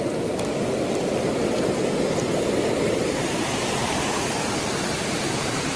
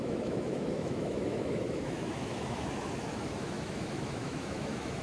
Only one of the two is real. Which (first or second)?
first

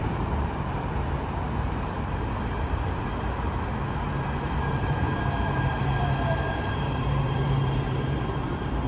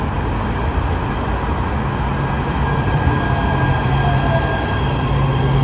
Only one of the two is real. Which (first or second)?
second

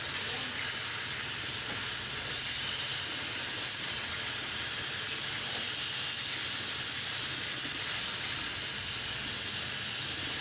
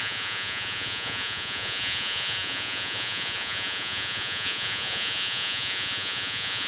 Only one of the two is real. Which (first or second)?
first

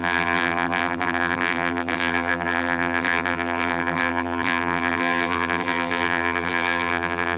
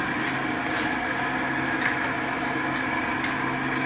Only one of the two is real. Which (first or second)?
second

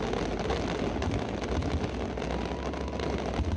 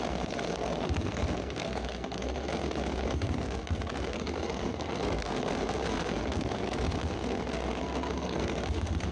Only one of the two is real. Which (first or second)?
first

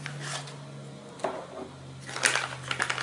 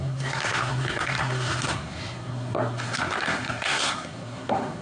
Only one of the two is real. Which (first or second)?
first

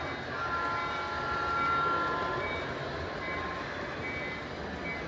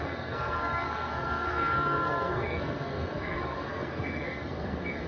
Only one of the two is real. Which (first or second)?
first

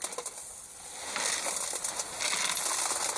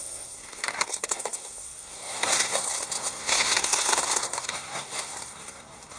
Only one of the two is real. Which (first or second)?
first